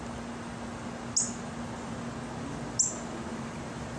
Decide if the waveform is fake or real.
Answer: real